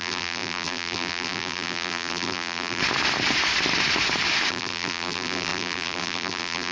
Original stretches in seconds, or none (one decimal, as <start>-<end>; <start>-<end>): 2.8-4.5